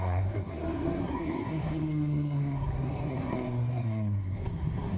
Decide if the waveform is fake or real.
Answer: fake